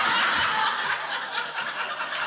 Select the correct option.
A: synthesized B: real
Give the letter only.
B